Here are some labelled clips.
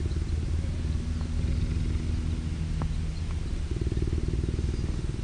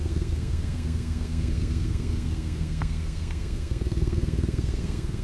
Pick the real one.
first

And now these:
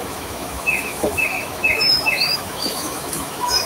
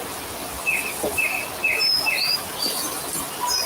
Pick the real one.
second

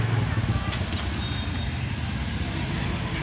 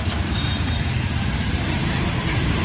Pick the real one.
first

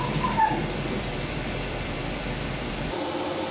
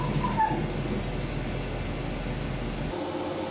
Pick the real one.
second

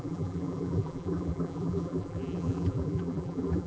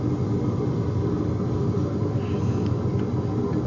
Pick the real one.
second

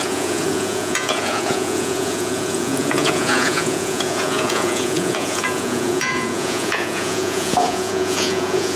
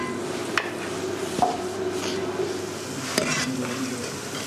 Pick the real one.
second